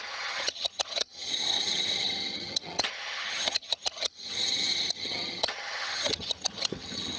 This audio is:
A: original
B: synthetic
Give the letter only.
B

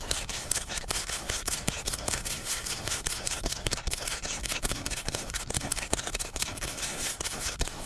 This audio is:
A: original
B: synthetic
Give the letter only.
B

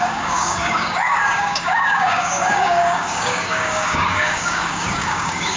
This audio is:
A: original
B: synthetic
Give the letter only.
B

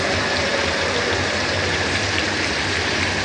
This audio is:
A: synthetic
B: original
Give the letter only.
A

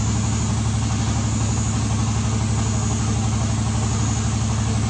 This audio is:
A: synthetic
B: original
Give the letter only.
B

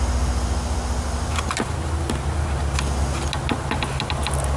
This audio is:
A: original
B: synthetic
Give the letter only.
A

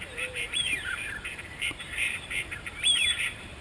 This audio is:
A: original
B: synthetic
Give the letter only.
B